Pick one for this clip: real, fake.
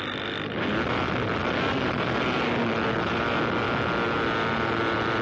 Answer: real